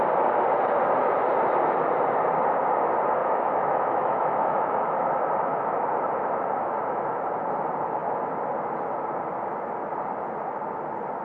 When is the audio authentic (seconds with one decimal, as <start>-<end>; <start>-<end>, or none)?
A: 0.0-3.2; 5.0-11.2